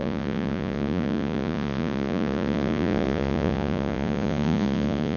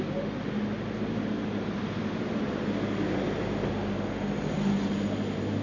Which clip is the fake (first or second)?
first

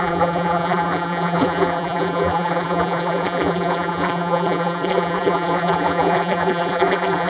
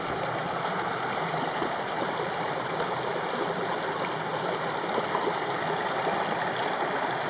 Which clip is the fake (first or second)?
first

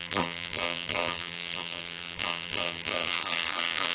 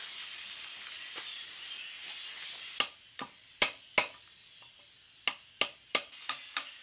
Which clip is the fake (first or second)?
first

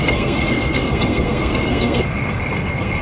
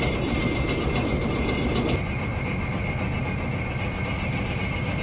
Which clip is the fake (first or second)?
first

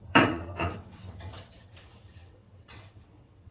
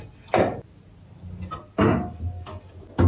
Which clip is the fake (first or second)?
first